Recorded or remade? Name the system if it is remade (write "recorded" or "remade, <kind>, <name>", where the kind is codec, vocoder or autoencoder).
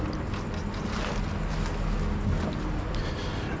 recorded